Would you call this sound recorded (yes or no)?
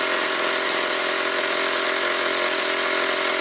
yes